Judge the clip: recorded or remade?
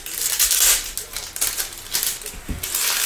recorded